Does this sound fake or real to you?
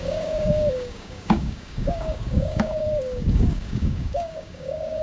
fake